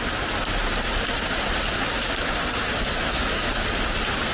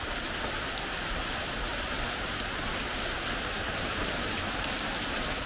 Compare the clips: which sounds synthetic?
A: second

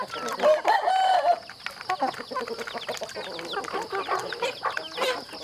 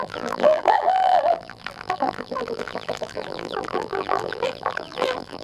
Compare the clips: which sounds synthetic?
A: second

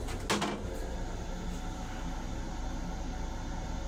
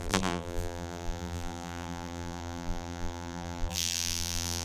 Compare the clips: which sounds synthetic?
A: second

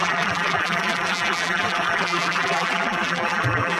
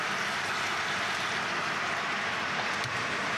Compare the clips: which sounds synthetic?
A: first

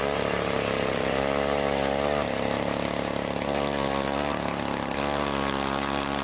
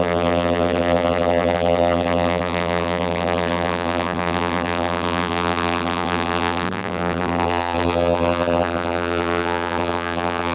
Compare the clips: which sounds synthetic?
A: second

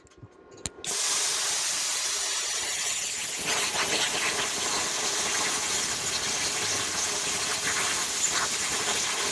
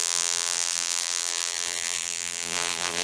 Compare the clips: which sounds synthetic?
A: second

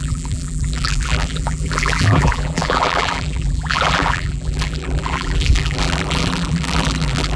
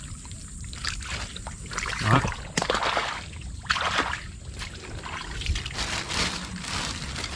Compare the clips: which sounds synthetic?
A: first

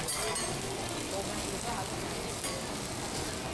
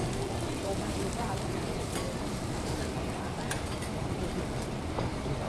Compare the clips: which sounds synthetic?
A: second